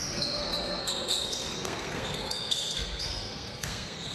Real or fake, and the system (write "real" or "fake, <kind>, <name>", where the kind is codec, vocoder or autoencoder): fake, codec, SNAC